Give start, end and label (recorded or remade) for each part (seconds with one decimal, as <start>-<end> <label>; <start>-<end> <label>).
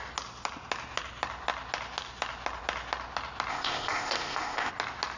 0.0-3.5 recorded; 3.5-4.7 remade; 4.7-5.2 recorded